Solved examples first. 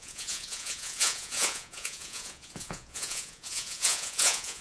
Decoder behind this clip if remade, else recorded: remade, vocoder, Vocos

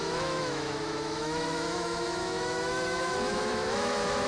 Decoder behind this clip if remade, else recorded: remade, autoencoder, DAC-VAE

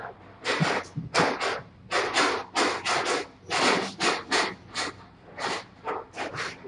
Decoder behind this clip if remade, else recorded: recorded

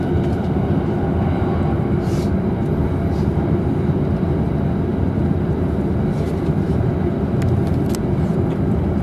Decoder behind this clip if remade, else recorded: recorded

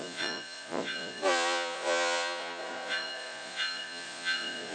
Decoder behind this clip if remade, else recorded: remade, vocoder, Vocos